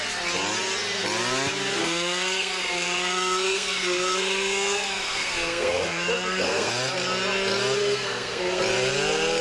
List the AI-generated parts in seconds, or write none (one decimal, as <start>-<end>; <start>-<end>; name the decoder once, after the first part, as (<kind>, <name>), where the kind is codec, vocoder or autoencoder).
1.8-6.7 (codec, SNAC); 7.8-8.6